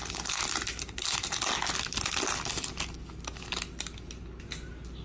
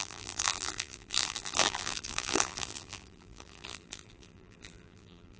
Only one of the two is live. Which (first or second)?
first